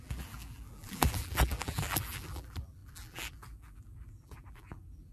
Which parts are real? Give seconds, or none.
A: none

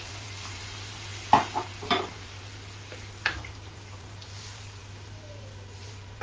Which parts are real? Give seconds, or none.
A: 1.1-1.6; 2.5-3.4; 4.8-5.4

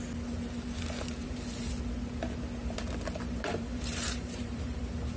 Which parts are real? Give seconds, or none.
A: 0.0-1.2; 1.7-2.6; 4.8-5.2

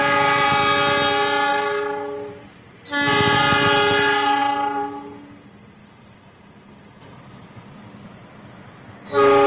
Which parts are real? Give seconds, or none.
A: 0.0-1.5; 2.3-4.4; 7.5-9.5

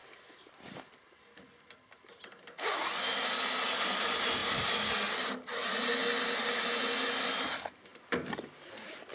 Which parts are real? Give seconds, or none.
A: 3.2-4.4; 5.9-9.1

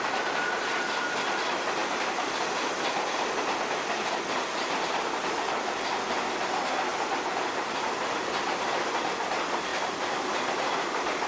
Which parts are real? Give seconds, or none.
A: 0.0-6.9; 9.0-9.7; 10.5-11.3